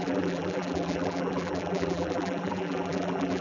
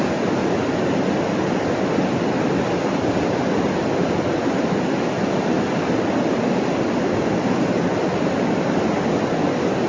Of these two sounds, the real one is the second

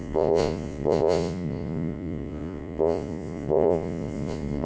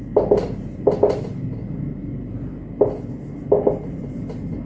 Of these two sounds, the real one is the second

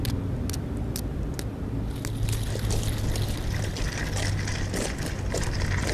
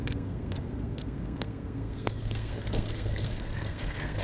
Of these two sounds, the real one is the first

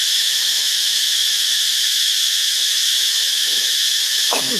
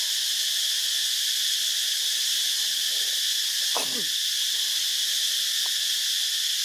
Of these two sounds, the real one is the second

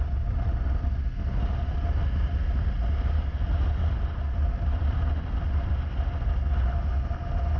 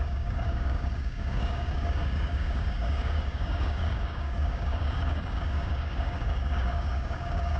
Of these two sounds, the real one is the first